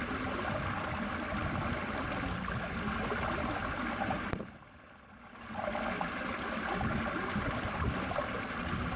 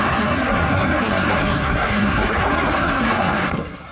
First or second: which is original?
first